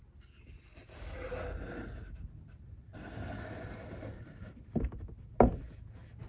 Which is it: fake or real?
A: real